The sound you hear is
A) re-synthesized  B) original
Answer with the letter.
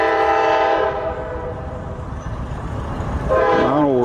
A